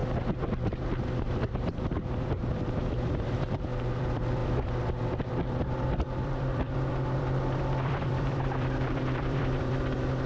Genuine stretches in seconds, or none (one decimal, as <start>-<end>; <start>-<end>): 0.0-1.2; 4.4-5.0